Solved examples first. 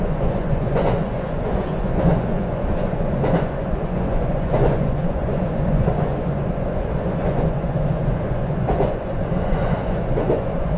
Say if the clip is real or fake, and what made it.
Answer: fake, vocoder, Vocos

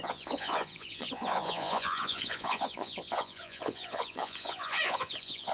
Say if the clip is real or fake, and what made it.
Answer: fake, vocoder, Vocos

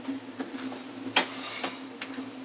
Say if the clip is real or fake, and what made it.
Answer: real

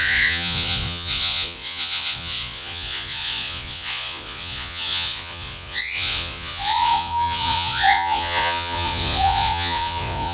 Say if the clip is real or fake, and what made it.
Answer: fake, vocoder, Vocos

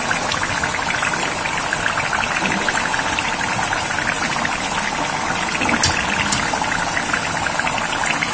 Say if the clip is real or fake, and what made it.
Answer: real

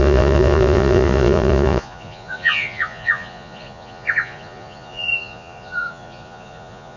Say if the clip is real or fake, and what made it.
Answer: fake, vocoder, Vocos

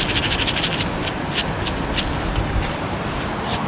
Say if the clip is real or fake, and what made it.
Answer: real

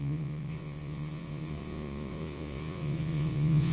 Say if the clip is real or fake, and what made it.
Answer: fake, vocoder, Vocos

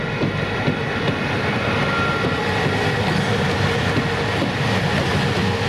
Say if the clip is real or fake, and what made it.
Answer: real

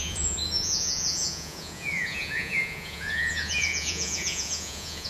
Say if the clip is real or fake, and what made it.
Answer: fake, vocoder, Vocos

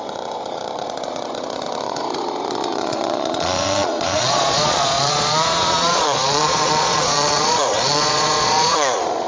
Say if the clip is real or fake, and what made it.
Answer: fake, vocoder, Vocos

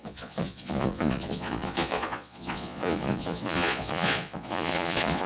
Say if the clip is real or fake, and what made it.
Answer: fake, vocoder, Vocos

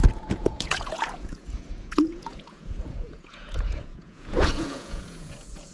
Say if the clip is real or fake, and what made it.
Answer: fake, vocoder, Vocos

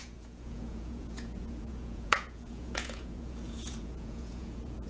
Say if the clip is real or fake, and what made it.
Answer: fake, vocoder, Vocos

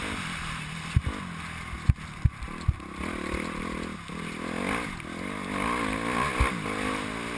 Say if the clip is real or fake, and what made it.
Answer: real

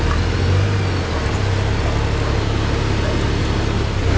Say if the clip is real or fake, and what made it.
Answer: real